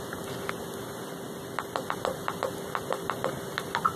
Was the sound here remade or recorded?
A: recorded